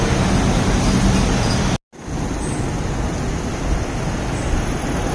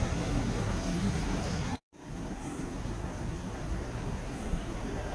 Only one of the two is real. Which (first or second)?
first